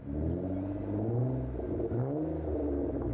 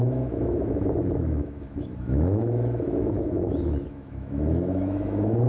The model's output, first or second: second